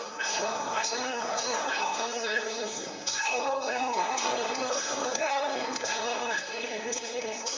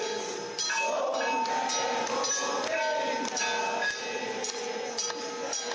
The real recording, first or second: second